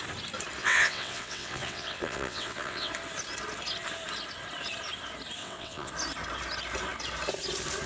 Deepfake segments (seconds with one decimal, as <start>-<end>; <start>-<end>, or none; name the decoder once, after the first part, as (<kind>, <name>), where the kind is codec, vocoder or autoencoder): 0.6-2.9 (vocoder, WaveNeXt); 5.4-5.9